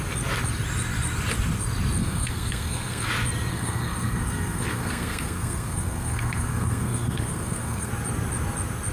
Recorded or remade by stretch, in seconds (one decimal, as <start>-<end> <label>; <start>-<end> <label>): 0.0-2.0 recorded; 2.0-3.1 remade; 3.1-3.5 recorded; 3.5-7.9 remade; 7.9-8.9 recorded